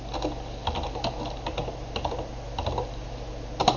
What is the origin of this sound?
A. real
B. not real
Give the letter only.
A